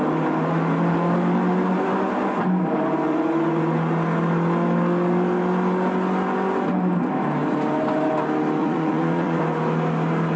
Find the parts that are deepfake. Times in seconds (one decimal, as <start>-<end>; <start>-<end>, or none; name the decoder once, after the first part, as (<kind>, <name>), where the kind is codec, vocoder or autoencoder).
8.6-9.4 (vocoder, Vocos)